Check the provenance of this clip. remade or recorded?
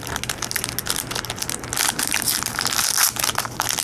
recorded